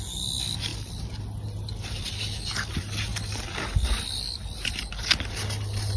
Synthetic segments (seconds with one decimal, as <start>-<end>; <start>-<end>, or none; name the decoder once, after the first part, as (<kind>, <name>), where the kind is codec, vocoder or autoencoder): none